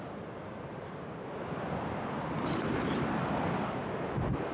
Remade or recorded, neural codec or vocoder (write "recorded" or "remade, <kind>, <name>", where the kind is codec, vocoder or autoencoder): recorded